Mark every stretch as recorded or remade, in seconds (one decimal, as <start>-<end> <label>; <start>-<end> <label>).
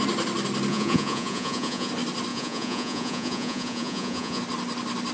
0.0-0.7 recorded; 0.7-1.9 remade; 1.9-2.3 recorded; 2.3-4.4 remade; 4.4-5.1 recorded